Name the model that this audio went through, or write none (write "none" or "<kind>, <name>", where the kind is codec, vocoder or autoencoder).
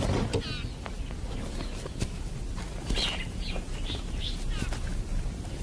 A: none